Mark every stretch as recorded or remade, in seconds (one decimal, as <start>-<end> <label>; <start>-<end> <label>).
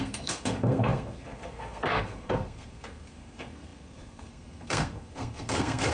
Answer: 0.0-5.9 remade